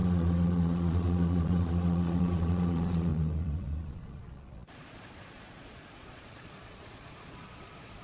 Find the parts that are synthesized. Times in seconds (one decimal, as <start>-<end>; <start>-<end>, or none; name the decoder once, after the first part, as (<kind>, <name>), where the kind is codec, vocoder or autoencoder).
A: 0.0-8.0 (vocoder, Vocos)